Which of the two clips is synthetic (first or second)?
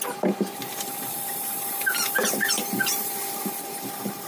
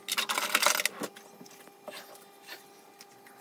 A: first